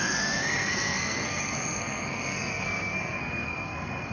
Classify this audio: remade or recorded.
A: remade